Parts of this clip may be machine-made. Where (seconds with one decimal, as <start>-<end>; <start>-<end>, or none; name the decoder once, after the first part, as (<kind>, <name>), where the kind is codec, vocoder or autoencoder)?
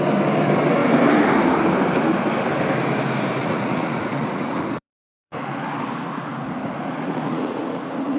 3.4-8.2 (vocoder, Vocos)